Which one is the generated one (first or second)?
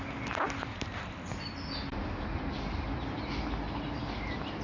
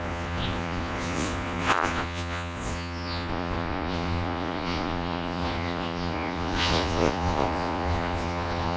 second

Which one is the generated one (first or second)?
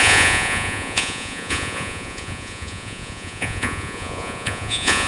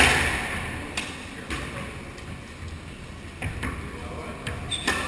first